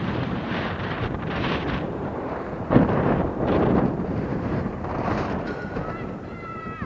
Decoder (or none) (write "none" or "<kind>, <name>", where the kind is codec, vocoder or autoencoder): vocoder, BigVGAN v2